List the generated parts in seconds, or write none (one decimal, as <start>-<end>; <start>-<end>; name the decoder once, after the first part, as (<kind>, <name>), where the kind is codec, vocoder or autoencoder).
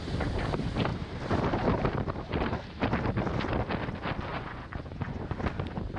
4.3-5.4 (vocoder, Vocos)